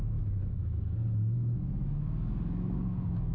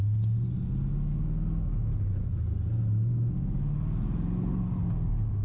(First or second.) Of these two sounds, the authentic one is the second